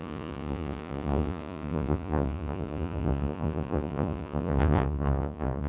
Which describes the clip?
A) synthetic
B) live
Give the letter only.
A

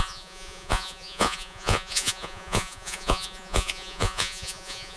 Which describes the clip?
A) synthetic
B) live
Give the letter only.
A